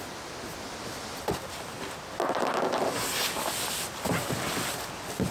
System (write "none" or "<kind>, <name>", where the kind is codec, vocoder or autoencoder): none